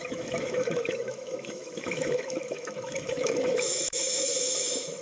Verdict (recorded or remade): remade